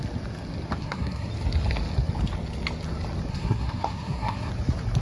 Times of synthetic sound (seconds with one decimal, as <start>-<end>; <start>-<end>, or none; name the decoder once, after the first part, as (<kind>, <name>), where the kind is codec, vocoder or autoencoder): 0.8-1.3 (codec, SNAC); 3.3-4.5